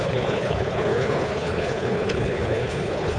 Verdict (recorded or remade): remade